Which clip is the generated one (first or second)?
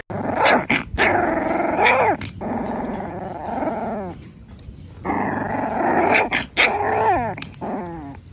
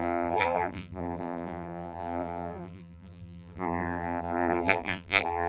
second